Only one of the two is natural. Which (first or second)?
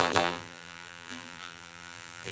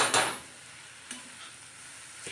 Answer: second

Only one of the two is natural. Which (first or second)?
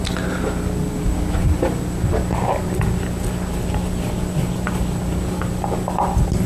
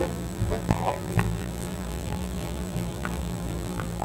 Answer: first